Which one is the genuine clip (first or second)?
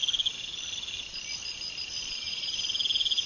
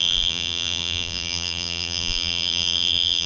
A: first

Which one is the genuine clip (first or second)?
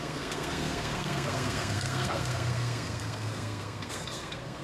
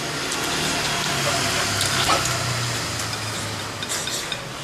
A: second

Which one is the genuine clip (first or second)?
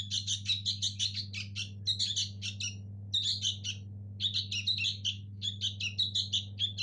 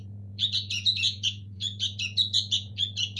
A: first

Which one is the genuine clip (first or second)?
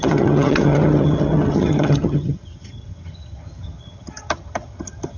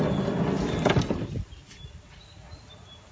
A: second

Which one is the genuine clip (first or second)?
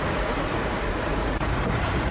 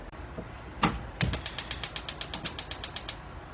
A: second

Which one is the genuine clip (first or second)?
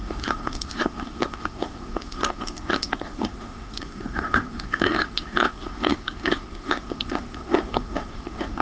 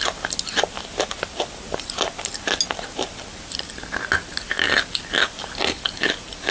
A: second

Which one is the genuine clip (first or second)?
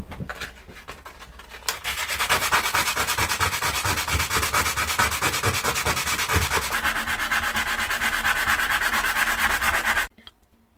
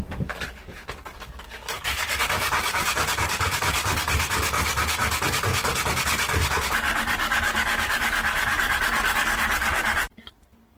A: first